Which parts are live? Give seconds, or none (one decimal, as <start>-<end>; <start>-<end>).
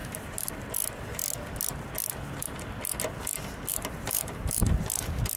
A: 0.5-3.7; 4.8-5.4